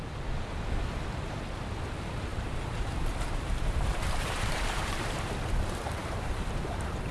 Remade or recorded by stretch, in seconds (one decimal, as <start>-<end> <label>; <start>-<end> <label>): 0.0-2.3 recorded; 2.3-5.3 remade; 5.3-6.0 recorded; 6.0-7.1 remade